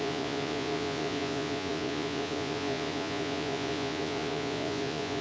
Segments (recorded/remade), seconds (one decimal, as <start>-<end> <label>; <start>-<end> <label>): 0.0-5.2 remade